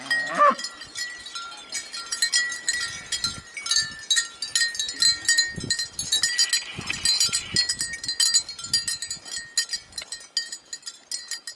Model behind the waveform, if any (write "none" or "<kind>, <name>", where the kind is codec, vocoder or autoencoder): none